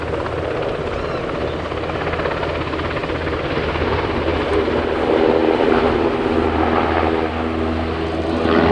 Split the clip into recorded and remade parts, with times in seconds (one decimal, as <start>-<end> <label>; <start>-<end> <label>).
0.0-8.7 recorded